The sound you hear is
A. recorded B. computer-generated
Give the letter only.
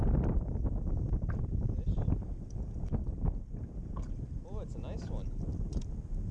A